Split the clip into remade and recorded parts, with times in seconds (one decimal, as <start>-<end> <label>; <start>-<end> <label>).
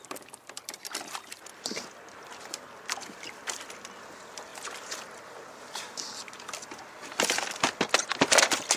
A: 0.0-8.8 recorded